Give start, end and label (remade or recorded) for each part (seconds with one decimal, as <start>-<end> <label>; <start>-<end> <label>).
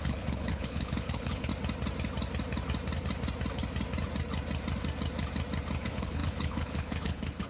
0.0-1.5 remade; 1.5-5.8 recorded; 5.8-7.5 remade